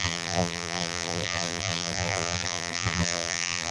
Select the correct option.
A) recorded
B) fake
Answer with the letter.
B